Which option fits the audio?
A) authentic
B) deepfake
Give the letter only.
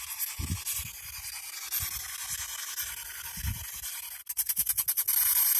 A